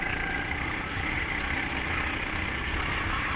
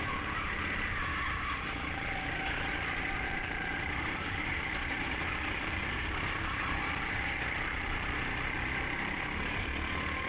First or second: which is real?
first